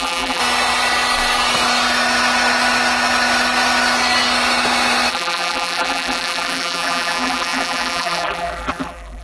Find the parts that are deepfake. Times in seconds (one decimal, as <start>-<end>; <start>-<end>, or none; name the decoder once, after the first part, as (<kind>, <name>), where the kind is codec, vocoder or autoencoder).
0.0-0.4 (vocoder, BigVGAN v2); 5.1-9.2